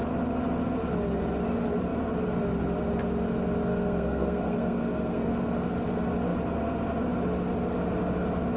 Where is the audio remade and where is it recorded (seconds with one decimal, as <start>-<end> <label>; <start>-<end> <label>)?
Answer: 0.0-3.7 recorded; 3.7-5.3 remade; 5.3-8.6 recorded